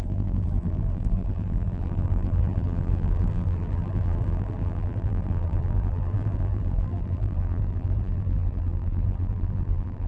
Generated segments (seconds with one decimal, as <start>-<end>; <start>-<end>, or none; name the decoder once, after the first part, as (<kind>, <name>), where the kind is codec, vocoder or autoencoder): 0.0-10.1 (vocoder, BigVGAN v2)